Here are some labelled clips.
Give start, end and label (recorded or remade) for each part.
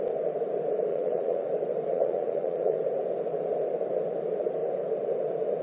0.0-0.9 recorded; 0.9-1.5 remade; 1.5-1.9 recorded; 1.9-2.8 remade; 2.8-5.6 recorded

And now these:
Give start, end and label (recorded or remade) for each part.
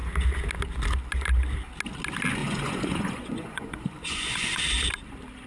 0.0-2.4 recorded; 2.4-4.6 remade; 4.6-5.5 recorded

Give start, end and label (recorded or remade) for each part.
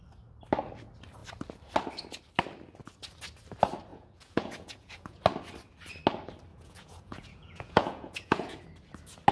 0.0-3.9 recorded; 3.9-5.2 remade; 5.2-6.5 recorded; 6.5-8.6 remade; 8.6-9.3 recorded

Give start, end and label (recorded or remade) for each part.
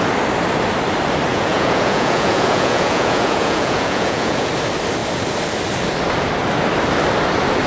0.0-1.3 recorded; 1.3-4.5 remade; 4.5-7.7 recorded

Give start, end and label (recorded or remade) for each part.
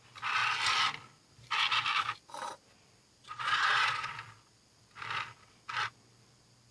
0.0-3.2 recorded; 3.2-4.1 remade; 4.1-6.7 recorded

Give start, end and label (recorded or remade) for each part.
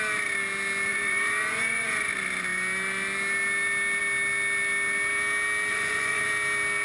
0.0-0.9 recorded; 0.9-2.1 remade; 2.1-5.7 recorded; 5.7-6.3 remade; 6.3-6.8 recorded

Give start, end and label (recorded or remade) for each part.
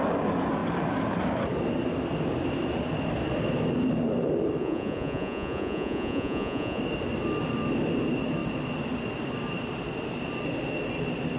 0.0-4.6 recorded; 4.6-6.8 remade; 6.8-11.4 recorded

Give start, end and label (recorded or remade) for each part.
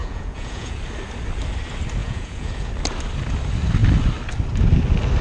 0.0-0.8 remade; 0.8-2.0 recorded; 2.0-2.7 remade; 2.7-5.2 recorded